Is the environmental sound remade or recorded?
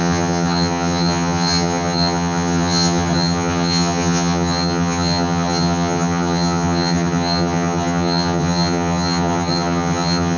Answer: remade